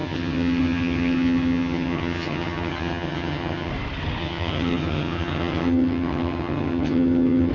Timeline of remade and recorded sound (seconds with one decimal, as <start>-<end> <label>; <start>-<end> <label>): 0.0-3.7 remade; 3.7-4.2 recorded; 4.2-7.5 remade